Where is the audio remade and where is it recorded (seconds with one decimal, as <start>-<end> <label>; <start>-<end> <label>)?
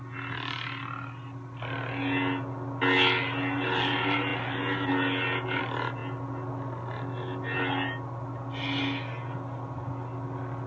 0.0-10.7 recorded